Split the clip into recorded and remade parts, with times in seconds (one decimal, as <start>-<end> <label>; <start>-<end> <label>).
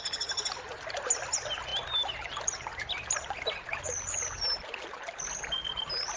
0.0-6.2 recorded